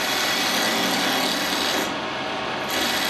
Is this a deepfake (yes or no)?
no